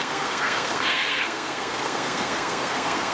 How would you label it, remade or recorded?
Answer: remade